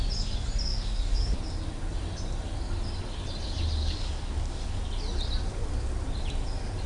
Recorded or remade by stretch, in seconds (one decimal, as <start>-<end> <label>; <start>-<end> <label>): 0.0-0.7 recorded; 0.7-1.4 remade; 1.4-3.8 recorded; 3.8-4.9 remade; 4.9-6.9 recorded